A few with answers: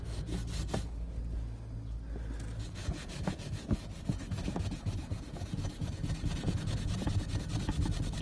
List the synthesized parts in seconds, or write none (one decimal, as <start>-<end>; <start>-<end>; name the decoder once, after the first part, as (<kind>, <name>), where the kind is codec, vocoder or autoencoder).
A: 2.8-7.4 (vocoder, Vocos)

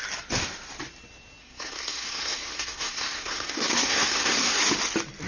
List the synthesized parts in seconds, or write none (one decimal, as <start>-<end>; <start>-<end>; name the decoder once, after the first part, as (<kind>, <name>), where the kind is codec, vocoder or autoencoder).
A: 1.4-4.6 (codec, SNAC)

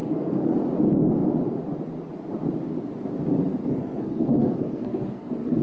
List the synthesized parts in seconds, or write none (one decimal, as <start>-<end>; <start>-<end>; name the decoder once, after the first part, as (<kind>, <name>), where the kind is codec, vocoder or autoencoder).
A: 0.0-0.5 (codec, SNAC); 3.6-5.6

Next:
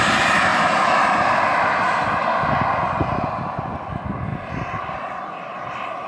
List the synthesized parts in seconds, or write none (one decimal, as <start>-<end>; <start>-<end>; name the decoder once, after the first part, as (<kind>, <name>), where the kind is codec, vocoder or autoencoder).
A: none

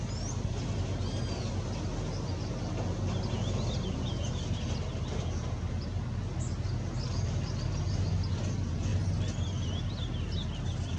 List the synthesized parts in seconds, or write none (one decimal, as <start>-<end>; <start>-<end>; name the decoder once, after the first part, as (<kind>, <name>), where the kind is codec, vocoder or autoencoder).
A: none

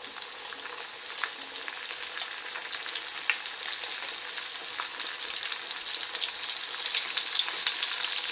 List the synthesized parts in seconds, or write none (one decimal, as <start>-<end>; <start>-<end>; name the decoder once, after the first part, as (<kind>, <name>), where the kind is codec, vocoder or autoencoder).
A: none